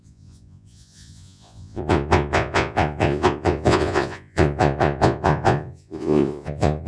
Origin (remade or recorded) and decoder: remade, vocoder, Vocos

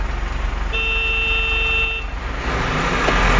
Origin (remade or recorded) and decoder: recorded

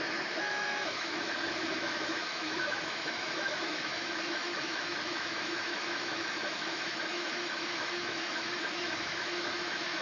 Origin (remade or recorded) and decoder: remade, autoencoder, DAC-VAE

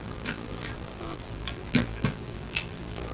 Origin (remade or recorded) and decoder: remade, vocoder, BigVGAN v2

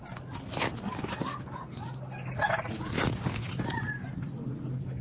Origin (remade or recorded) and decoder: recorded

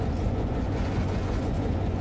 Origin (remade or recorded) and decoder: remade, vocoder, Vocos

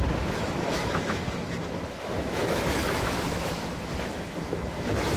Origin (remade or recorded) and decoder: remade, autoencoder, DAC-VAE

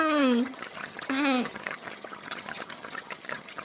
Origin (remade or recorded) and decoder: remade, vocoder, HiFi-GAN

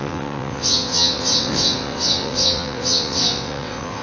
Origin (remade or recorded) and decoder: remade, vocoder, WaveNeXt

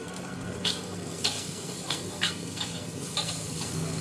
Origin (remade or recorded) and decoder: remade, codec, SNAC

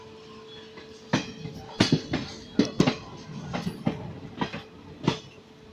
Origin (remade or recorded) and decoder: recorded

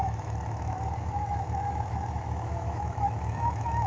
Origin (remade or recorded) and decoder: remade, autoencoder, DAC-VAE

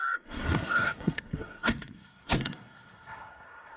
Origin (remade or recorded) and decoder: remade, codec, SNAC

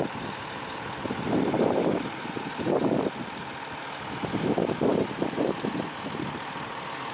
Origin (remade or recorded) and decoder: recorded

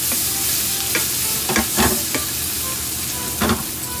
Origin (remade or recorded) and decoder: recorded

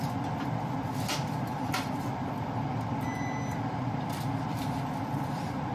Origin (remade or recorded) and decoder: remade, vocoder, BigVGAN v2